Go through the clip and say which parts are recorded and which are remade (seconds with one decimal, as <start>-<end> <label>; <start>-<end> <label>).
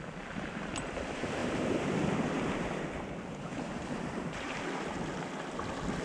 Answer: 0.0-1.4 recorded; 1.4-2.2 remade; 2.2-3.5 recorded; 3.5-4.6 remade; 4.6-6.0 recorded